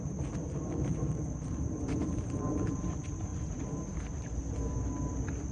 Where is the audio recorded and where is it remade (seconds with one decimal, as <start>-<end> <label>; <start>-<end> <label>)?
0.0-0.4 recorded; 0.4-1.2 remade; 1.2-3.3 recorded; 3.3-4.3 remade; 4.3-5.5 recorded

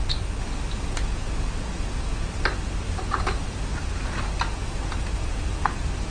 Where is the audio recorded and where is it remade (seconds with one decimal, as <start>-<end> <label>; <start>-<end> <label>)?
0.0-6.1 recorded

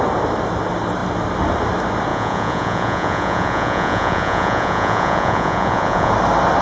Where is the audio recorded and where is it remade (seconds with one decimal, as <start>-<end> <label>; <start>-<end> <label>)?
0.0-2.1 recorded; 2.1-6.1 remade; 6.1-6.6 recorded

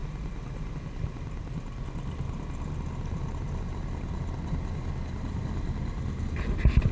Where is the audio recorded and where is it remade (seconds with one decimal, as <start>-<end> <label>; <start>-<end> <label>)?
0.0-6.9 recorded

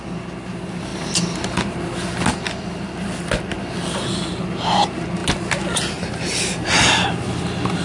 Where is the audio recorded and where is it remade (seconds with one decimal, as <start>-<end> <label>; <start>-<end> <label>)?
0.0-7.8 recorded

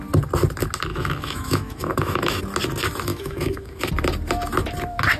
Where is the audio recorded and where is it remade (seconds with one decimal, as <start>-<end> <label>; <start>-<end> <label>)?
0.0-0.9 recorded; 0.9-2.4 remade; 2.4-3.1 recorded; 3.1-3.9 remade; 3.9-5.2 recorded

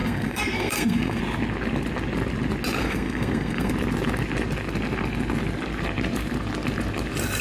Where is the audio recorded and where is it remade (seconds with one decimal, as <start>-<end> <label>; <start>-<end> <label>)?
0.0-1.2 remade; 1.2-2.8 recorded; 2.8-3.7 remade; 3.7-7.4 recorded